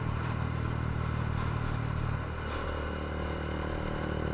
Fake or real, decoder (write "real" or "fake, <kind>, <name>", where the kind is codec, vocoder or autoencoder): real